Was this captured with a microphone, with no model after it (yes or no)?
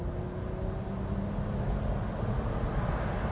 yes